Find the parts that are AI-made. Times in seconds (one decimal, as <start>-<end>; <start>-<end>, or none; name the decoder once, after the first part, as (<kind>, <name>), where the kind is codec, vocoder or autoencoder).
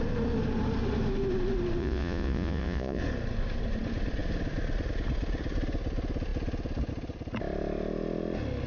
1.8-3.0 (vocoder, Vocos)